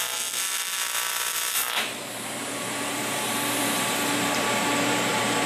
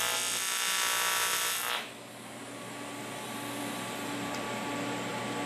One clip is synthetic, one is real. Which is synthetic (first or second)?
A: first